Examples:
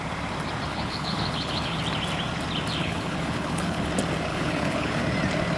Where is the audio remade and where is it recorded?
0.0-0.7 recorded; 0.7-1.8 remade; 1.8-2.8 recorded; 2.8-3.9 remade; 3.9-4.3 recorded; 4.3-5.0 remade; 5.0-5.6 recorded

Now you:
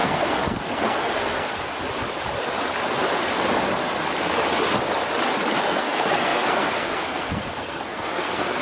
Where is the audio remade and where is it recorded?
0.0-1.7 remade; 1.7-5.6 recorded; 5.6-8.6 remade

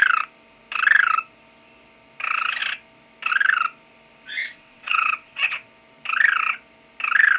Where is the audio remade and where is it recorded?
0.0-4.4 recorded; 4.4-5.5 remade; 5.5-7.4 recorded

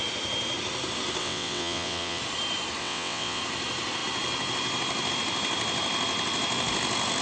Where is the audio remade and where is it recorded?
0.0-1.2 recorded; 1.2-2.2 remade; 2.2-2.8 recorded; 2.8-3.4 remade; 3.4-7.2 recorded

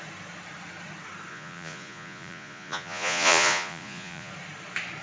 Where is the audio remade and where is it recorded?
0.0-1.3 recorded; 1.3-4.3 remade; 4.3-5.0 recorded